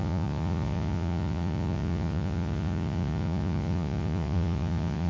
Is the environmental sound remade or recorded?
remade